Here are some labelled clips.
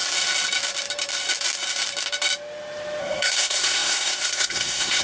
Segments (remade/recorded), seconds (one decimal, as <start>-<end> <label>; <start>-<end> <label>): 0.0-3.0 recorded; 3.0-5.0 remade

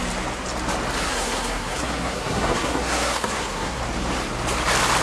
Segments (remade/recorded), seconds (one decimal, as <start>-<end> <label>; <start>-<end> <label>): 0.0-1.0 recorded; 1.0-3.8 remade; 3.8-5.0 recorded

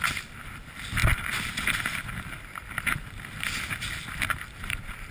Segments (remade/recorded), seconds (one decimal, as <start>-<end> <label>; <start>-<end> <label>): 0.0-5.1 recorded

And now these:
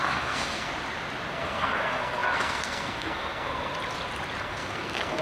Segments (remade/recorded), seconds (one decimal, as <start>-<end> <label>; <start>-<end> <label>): 0.0-0.7 remade; 0.7-1.3 recorded; 1.3-3.7 remade; 3.7-4.4 recorded; 4.4-5.2 remade